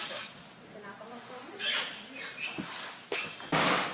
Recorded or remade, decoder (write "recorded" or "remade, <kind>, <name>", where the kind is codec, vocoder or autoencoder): recorded